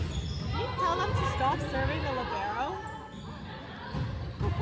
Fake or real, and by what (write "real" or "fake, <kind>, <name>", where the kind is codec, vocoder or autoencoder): real